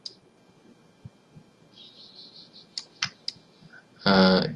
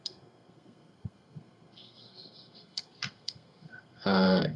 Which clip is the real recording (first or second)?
first